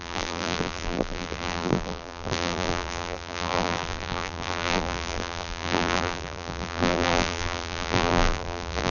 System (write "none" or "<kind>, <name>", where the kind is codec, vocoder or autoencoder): vocoder, BigVGAN v2